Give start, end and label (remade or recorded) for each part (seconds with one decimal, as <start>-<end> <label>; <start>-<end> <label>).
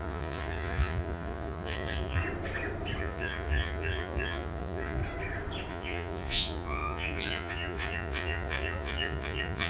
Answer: 0.0-2.2 remade; 2.2-3.0 recorded; 3.0-5.0 remade; 5.0-5.7 recorded; 5.7-9.7 remade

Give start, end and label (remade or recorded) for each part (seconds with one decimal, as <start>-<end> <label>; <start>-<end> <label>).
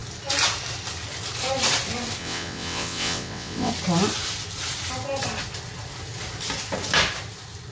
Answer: 0.0-2.2 recorded; 2.2-3.7 remade; 3.7-7.7 recorded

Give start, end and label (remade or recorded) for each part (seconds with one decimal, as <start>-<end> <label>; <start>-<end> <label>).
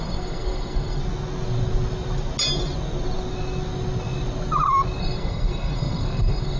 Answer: 0.0-1.0 remade; 1.0-5.0 recorded; 5.0-6.6 remade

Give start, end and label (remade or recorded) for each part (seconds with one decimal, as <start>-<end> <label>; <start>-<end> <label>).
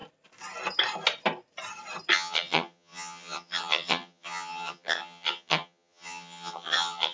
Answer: 0.0-2.1 recorded; 2.1-7.1 remade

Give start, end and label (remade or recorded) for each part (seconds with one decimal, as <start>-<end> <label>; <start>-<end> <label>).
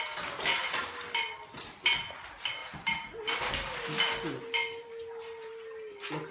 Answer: 0.0-6.3 recorded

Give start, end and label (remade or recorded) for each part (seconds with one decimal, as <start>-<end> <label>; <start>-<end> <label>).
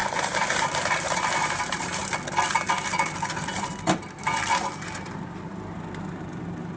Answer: 0.0-2.0 remade; 2.0-6.1 recorded; 6.1-6.8 remade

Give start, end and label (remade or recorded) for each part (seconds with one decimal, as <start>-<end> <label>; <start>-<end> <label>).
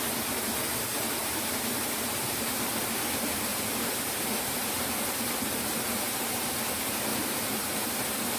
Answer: 0.0-1.2 recorded; 1.2-2.8 remade; 2.8-3.5 recorded; 3.5-6.6 remade; 6.6-7.1 recorded; 7.1-7.9 remade; 7.9-8.4 recorded